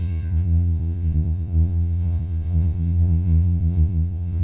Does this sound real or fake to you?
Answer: fake